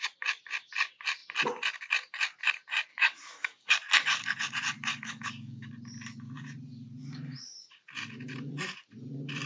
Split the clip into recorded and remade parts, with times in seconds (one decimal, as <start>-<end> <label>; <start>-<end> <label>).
0.0-2.9 recorded; 2.9-3.7 remade; 3.7-4.9 recorded; 4.9-5.7 remade; 5.7-9.5 recorded